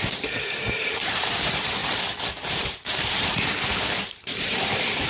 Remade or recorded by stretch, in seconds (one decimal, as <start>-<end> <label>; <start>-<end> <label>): 0.0-1.8 remade; 1.8-2.5 recorded; 2.5-5.1 remade